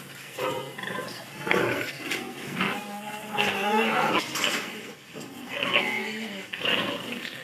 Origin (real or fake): fake